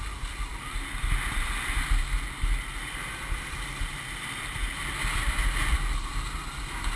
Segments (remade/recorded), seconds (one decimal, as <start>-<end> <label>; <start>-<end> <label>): 0.0-7.0 recorded